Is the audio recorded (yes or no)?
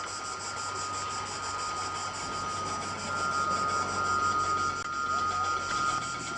yes